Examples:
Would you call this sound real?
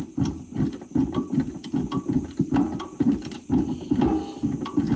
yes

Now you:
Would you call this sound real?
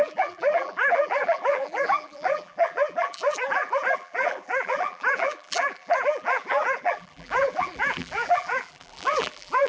no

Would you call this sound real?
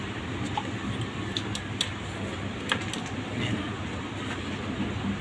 yes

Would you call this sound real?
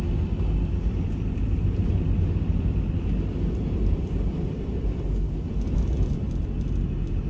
yes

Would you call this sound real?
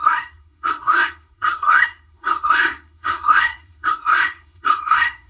no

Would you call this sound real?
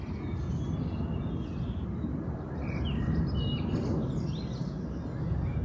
yes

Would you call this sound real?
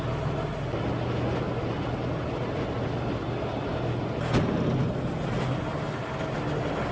yes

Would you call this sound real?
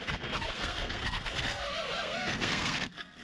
no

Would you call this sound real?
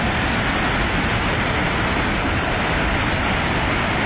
yes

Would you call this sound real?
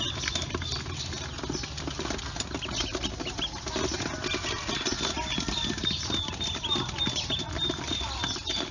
yes